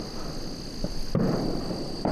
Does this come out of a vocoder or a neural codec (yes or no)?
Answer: no